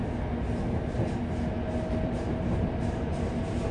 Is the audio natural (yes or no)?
yes